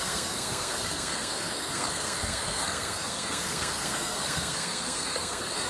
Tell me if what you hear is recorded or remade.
remade